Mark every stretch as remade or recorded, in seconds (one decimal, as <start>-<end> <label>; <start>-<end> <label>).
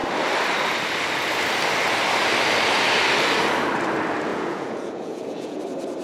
0.0-4.3 recorded; 4.3-5.6 remade; 5.6-6.0 recorded